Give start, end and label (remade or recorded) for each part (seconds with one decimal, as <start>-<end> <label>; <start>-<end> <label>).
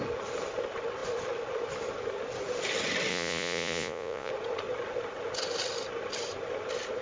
0.0-3.1 recorded; 3.1-4.3 remade; 4.3-7.0 recorded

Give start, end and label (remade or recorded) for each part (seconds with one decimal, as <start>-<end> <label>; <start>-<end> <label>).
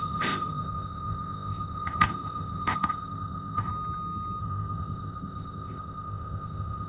0.0-3.7 remade; 3.7-4.4 recorded; 4.4-6.9 remade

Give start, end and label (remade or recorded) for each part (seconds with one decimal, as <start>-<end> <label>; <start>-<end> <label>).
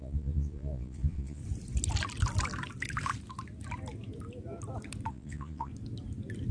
0.0-1.4 remade; 1.4-5.1 recorded; 5.1-5.7 remade; 5.7-6.5 recorded